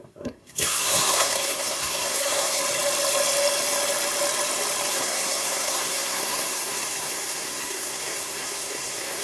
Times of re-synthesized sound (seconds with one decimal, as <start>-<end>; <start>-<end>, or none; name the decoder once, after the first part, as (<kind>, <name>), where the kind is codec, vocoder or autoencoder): 0.0-2.6 (codec, SNAC); 4.9-9.2